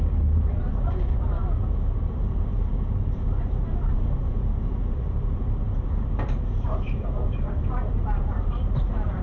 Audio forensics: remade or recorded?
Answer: remade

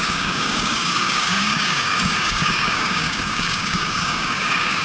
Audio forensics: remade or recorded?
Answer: remade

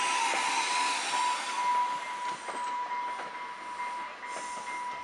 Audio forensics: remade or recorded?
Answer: recorded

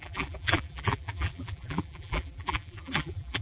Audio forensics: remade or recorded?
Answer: remade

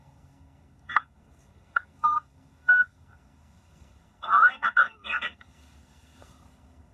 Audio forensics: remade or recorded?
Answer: remade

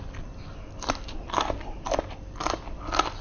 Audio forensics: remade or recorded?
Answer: remade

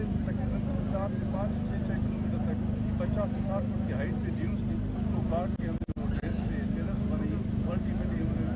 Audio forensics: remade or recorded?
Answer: recorded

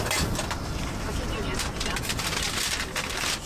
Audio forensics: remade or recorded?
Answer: recorded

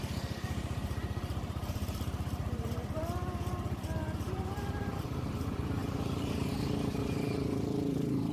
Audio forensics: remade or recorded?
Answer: remade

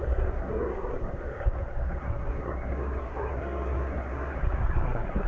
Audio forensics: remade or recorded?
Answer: remade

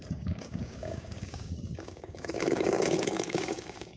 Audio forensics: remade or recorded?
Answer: remade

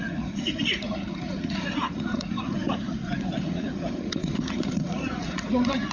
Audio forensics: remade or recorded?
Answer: remade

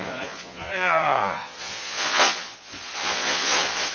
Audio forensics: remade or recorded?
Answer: remade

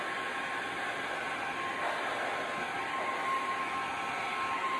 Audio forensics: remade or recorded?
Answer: recorded